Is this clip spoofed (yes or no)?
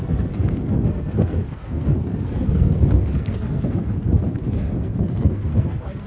yes